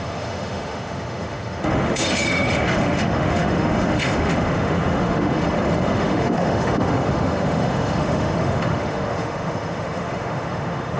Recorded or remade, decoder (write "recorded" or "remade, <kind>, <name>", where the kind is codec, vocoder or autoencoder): remade, autoencoder, DAC-VAE